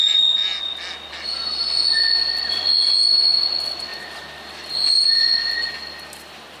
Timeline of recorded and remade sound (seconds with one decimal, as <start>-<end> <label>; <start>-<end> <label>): 0.0-6.6 recorded

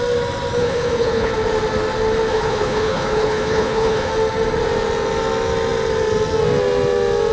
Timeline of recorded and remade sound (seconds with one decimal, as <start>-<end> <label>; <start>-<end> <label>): 0.0-0.6 recorded; 0.6-1.3 remade; 1.3-2.3 recorded; 2.3-4.1 remade; 4.1-7.3 recorded

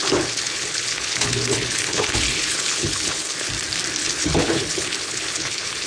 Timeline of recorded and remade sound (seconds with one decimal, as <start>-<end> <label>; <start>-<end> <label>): 0.0-3.5 remade; 3.5-4.0 recorded; 4.0-5.9 remade

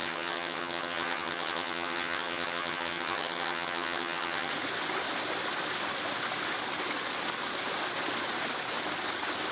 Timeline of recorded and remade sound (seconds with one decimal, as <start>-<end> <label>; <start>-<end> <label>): 0.0-4.5 remade; 4.5-9.5 recorded

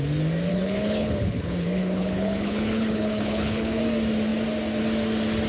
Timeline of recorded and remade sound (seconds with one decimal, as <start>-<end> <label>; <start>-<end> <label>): 0.0-0.5 recorded; 0.5-3.8 remade; 3.8-5.5 recorded

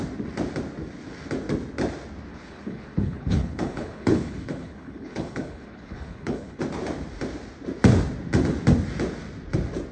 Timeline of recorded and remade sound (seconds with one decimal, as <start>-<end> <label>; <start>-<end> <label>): 0.0-2.3 recorded; 2.3-6.6 remade; 6.6-9.9 recorded

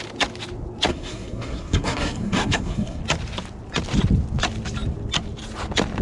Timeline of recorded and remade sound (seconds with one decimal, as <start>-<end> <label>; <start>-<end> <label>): 0.0-0.9 recorded; 0.9-3.0 remade; 3.0-6.0 recorded

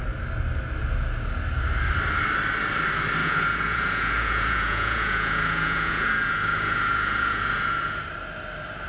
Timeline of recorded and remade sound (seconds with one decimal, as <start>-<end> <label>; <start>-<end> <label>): 0.0-3.2 recorded; 3.2-8.0 remade; 8.0-8.9 recorded